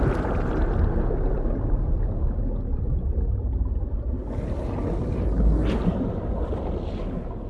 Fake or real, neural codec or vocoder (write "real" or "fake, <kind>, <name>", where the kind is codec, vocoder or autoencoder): real